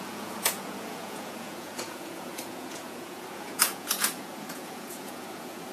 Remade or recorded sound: remade